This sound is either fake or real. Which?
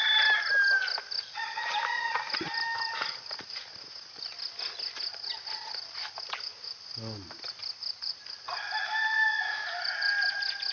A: real